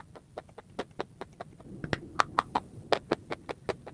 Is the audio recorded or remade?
recorded